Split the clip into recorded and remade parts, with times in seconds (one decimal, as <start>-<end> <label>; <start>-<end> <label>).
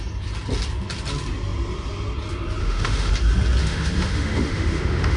0.0-2.6 recorded; 2.6-3.1 remade; 3.1-3.6 recorded; 3.6-5.2 remade